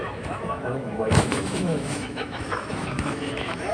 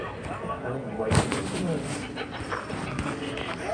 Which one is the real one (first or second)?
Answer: second